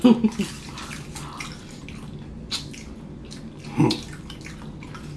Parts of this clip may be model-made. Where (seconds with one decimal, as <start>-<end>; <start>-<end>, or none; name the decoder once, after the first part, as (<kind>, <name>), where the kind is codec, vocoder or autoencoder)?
none